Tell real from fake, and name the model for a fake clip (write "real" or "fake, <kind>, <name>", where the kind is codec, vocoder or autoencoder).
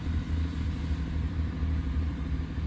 fake, vocoder, BigVGAN v2